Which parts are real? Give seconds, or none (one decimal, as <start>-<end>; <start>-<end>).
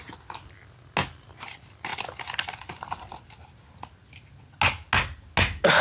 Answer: 0.0-5.8